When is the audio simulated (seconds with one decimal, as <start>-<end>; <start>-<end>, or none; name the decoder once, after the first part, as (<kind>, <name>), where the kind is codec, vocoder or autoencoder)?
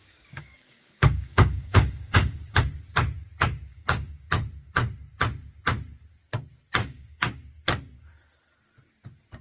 0.0-2.6 (codec, DAC); 3.7-4.3; 6.8-7.3